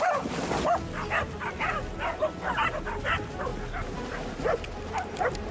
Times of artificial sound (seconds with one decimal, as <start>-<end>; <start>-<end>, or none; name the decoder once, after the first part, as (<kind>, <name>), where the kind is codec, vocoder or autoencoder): none